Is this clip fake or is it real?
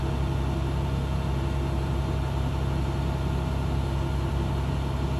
real